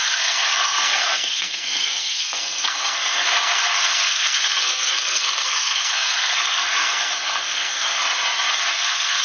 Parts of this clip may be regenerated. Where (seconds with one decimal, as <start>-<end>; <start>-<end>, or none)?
0.0-8.0; 8.7-9.2